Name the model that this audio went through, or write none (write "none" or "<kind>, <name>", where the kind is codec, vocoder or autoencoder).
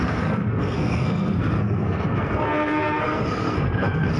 codec, SNAC